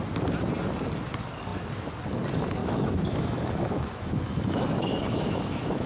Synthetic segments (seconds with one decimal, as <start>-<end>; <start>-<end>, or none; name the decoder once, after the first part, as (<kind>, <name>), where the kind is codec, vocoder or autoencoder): 2.6-5.9 (autoencoder, DAC-VAE)